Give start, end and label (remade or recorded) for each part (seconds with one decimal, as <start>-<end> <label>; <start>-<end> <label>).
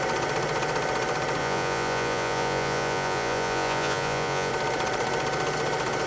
0.0-1.4 recorded; 1.4-4.5 remade; 4.5-6.1 recorded